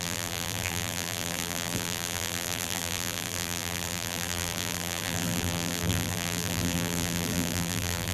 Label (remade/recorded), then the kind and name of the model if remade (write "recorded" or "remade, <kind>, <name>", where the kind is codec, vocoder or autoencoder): remade, vocoder, BigVGAN v2